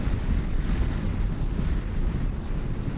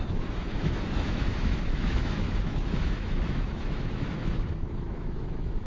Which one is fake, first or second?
second